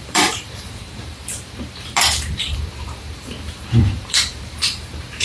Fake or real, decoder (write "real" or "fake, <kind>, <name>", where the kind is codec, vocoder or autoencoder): fake, vocoder, BigVGAN v2